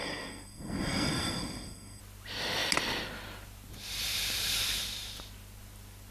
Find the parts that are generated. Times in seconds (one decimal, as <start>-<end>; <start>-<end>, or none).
0.0-2.0